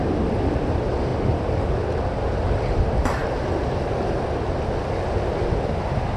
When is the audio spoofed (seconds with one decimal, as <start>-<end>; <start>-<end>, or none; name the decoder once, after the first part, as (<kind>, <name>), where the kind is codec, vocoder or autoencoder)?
3.2-3.9 (vocoder, BigVGAN v2)